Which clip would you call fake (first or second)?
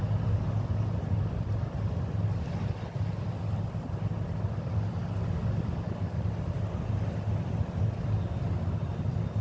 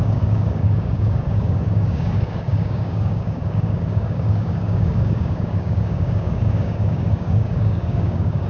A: second